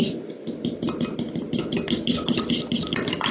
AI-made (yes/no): no